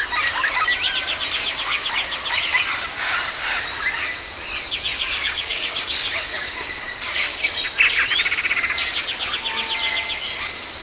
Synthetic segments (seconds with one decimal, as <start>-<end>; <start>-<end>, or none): 4.9-7.4